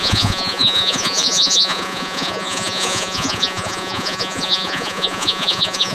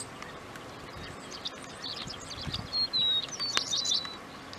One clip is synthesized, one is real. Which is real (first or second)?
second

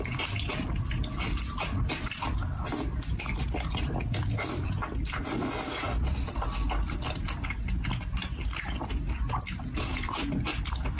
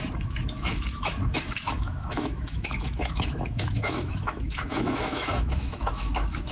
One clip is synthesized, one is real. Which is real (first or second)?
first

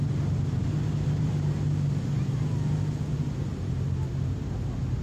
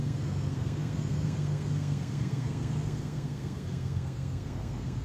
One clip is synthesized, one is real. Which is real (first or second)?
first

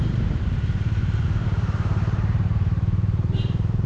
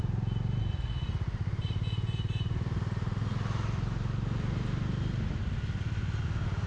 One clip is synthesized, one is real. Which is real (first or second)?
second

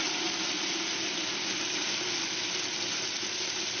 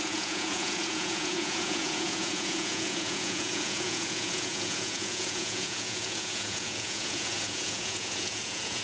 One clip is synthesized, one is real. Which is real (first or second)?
first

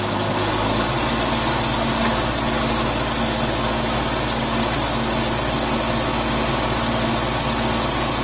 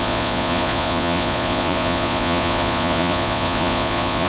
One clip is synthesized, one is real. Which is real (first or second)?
first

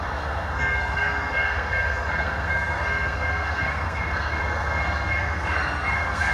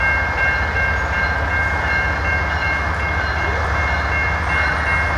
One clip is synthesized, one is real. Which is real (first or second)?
second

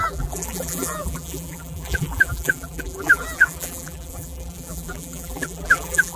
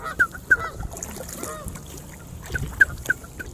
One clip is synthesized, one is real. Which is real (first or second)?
second